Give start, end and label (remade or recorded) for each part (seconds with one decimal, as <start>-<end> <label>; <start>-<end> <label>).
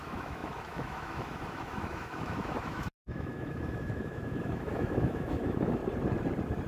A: 0.0-5.8 remade; 5.8-6.7 recorded